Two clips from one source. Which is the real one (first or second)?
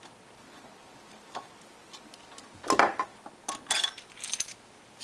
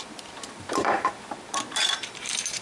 first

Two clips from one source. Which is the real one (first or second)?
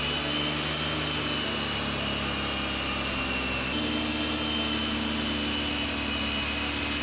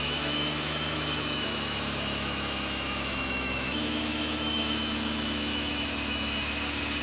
first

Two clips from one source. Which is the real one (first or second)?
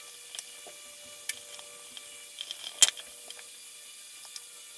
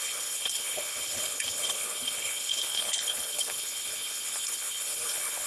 first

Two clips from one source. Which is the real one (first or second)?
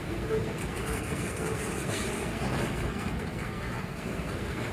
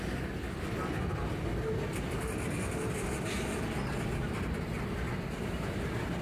second